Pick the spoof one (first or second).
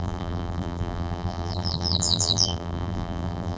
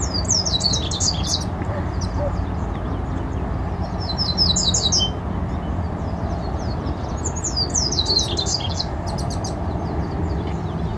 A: first